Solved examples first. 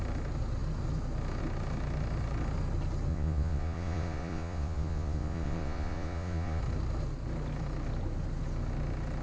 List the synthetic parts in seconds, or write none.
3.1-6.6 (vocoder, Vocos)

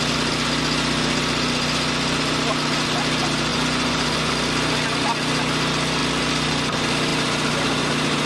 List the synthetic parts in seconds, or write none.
3.5-4.3 (vocoder, Vocos)

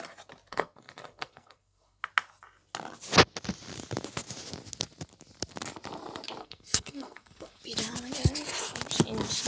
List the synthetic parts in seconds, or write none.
0.5-2.0 (codec, SNAC); 6.4-7.6

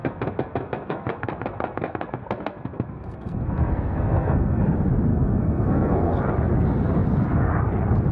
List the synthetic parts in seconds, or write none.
0.0-4.6 (codec, SNAC); 5.1-6.2